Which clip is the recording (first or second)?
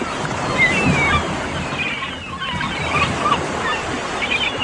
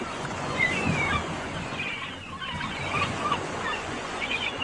first